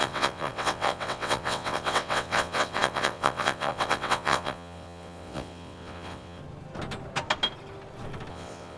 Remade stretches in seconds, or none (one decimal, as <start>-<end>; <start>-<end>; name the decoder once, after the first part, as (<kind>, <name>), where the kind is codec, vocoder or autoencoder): 0.0-6.4 (vocoder, WaveNeXt); 8.3-8.8